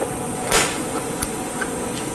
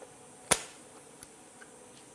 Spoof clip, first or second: first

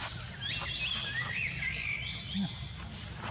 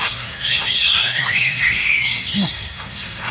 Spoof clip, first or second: second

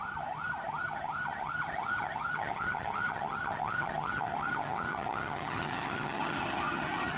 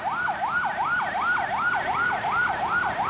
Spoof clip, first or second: first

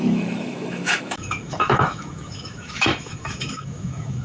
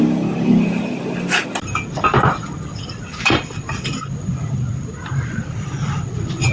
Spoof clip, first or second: first